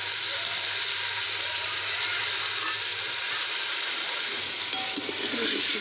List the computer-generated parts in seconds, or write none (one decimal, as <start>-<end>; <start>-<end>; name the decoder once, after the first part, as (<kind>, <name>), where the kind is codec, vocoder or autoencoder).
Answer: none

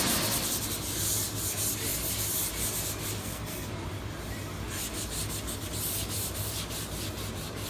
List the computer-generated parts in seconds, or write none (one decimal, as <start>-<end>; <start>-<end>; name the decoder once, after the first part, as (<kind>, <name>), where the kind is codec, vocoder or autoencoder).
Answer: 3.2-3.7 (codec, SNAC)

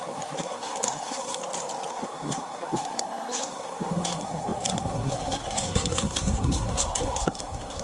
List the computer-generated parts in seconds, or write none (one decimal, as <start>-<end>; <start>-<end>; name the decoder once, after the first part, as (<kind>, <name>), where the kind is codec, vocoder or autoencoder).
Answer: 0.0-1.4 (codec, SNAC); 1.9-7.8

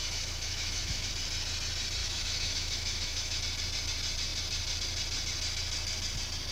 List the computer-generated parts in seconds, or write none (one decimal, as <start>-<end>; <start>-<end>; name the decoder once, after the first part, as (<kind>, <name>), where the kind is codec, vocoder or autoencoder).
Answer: 0.0-1.1 (autoencoder, DAC-VAE); 2.0-3.4

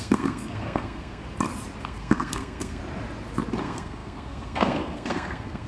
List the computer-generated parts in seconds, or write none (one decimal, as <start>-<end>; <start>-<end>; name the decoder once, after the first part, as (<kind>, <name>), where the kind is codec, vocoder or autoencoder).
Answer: 0.0-1.2 (codec, SNAC); 1.8-2.8; 3.6-5.7

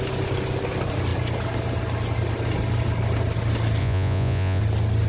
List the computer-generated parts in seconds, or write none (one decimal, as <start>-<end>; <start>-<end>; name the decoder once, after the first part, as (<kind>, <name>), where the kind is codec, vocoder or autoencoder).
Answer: 3.8-4.6 (vocoder, Vocos)

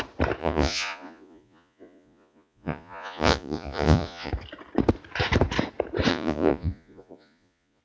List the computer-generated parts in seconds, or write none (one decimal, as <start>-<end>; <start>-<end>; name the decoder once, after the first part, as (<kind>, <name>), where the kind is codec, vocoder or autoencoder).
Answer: 0.4-4.3 (vocoder, Vocos); 6.1-7.8

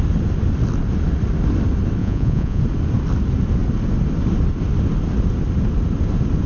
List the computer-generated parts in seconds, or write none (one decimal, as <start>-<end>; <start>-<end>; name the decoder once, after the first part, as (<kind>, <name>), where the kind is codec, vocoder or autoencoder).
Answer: 2.0-2.6 (vocoder, Vocos)